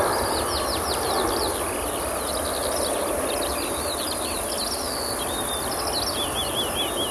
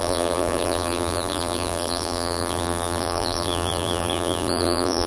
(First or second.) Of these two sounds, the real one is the first